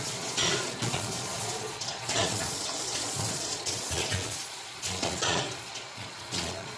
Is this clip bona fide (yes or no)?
no